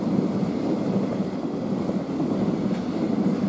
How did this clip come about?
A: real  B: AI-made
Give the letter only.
A